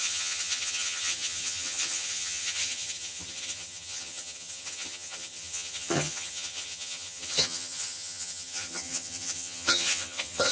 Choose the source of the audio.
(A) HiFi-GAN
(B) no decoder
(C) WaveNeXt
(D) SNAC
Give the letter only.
A